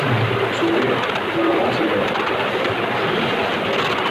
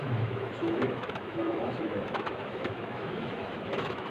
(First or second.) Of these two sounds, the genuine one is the first